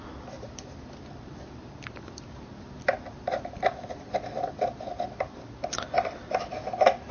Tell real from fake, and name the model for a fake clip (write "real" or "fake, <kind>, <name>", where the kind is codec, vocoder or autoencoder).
real